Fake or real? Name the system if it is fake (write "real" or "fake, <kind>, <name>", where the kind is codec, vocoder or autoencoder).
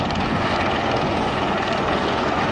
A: fake, vocoder, Vocos